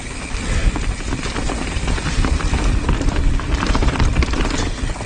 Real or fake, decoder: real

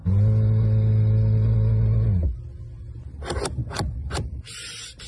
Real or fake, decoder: real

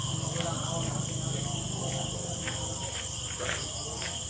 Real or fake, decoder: real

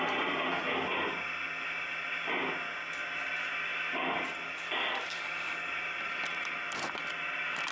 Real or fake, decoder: real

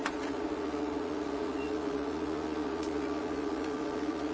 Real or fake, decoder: fake, vocoder, Vocos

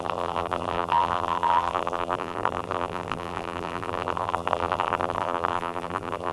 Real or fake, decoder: fake, vocoder, BigVGAN v2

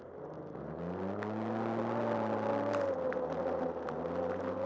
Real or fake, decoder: real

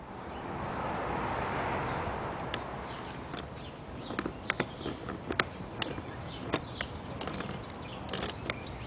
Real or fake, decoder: real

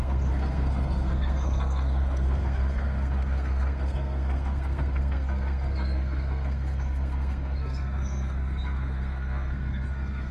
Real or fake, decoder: fake, codec, SNAC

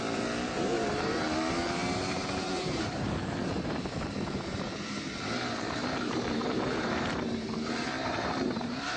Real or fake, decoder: fake, vocoder, BigVGAN v2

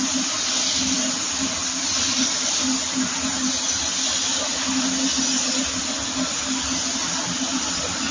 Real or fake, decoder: real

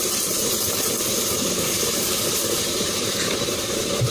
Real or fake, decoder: fake, vocoder, BigVGAN v2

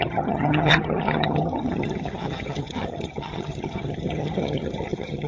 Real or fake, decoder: fake, vocoder, HiFi-GAN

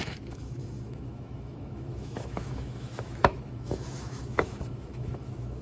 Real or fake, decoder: fake, autoencoder, DAC-VAE